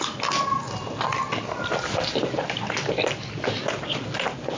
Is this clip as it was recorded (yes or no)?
yes